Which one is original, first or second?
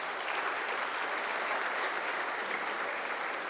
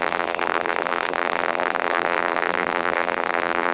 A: first